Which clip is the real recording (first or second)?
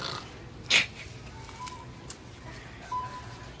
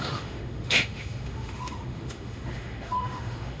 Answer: first